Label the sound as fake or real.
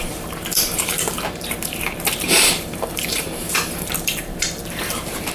fake